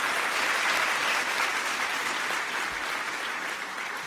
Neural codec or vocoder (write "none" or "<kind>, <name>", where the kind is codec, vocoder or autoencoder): none